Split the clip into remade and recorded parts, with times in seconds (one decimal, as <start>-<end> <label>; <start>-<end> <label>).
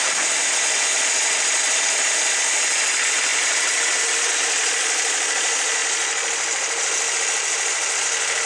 0.0-8.5 recorded